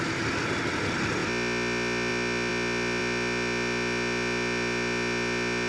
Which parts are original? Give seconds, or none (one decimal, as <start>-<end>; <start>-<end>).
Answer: 0.0-5.7